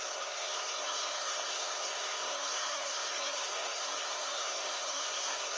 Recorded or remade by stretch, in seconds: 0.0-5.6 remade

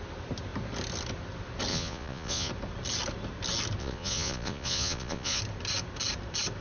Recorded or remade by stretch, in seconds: 0.0-1.7 recorded; 1.7-2.5 remade; 2.5-3.8 recorded; 3.8-5.4 remade; 5.4-6.6 recorded

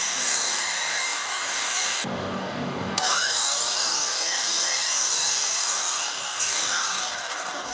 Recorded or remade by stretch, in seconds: 0.0-7.7 remade